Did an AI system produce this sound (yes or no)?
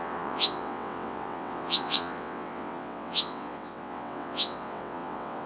yes